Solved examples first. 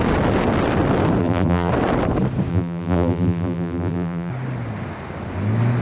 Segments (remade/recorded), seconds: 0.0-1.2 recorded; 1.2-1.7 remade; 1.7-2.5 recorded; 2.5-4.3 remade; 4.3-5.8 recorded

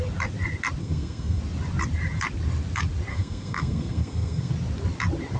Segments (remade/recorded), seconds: 0.0-0.8 recorded; 0.8-1.4 remade; 1.4-3.1 recorded; 3.1-4.5 remade; 4.5-5.4 recorded